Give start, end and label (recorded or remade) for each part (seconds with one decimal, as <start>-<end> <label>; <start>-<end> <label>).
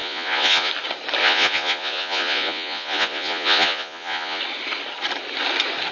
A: 0.0-0.7 remade; 0.7-1.2 recorded; 1.2-4.4 remade; 4.4-5.9 recorded